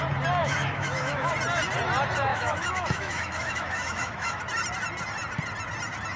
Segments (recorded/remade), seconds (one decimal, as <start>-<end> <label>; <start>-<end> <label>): 0.0-0.4 recorded; 0.4-1.3 remade; 1.3-2.3 recorded; 2.3-4.4 remade; 4.4-6.2 recorded